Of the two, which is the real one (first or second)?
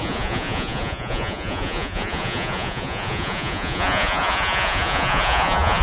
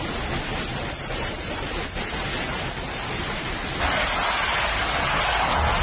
second